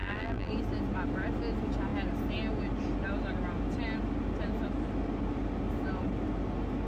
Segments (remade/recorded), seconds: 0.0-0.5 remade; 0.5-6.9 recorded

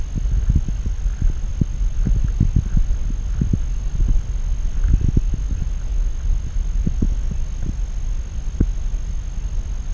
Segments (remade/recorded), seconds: 0.0-9.9 recorded

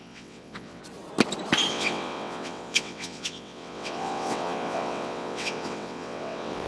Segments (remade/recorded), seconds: 0.0-0.8 remade; 0.8-1.7 recorded; 1.7-6.7 remade

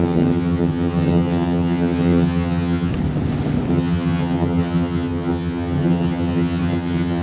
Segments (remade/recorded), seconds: 0.0-2.9 remade; 2.9-3.7 recorded; 3.7-7.2 remade

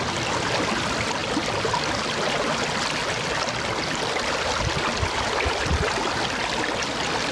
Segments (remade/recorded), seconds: 0.0-7.3 recorded

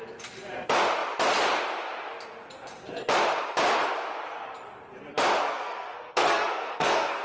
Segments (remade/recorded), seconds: 0.0-5.4 recorded; 5.4-7.2 remade

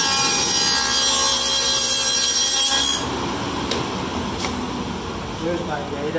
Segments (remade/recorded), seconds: 0.0-1.3 recorded; 1.3-2.7 remade; 2.7-4.1 recorded; 4.1-4.7 remade; 4.7-6.2 recorded

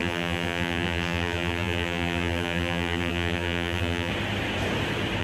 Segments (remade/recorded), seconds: 0.0-4.1 remade; 4.1-5.2 recorded